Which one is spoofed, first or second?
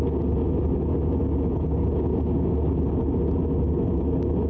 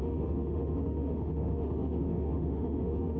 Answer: second